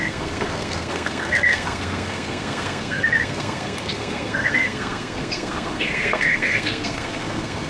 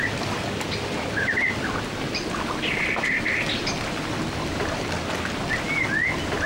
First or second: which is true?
second